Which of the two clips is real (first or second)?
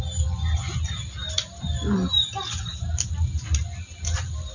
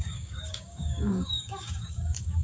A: first